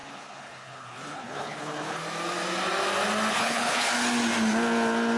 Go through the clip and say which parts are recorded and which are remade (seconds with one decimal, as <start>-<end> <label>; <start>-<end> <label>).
0.0-2.0 remade; 2.0-3.3 recorded; 3.3-3.9 remade; 3.9-5.2 recorded